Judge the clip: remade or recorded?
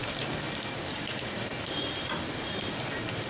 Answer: remade